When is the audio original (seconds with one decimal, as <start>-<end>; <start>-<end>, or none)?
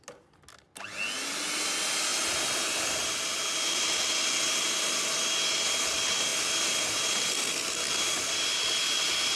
0.0-9.4